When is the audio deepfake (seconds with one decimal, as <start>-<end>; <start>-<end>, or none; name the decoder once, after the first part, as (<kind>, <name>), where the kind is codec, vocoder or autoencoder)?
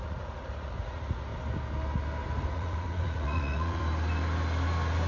0.0-1.3 (vocoder, Vocos); 2.4-3.8